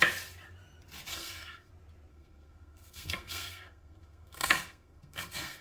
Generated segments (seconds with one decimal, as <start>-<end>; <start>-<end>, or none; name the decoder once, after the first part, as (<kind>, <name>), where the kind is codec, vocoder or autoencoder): 1.1-1.7 (codec, SNAC); 2.1-5.6